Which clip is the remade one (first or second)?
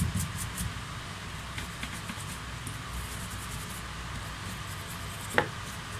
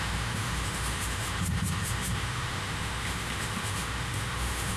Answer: second